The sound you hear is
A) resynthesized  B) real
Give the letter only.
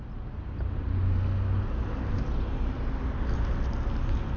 B